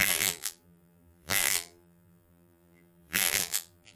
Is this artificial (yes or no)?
yes